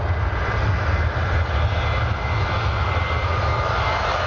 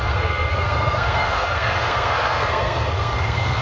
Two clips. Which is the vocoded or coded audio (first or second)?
second